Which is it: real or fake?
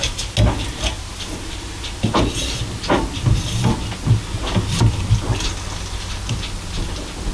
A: real